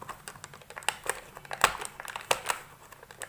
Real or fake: real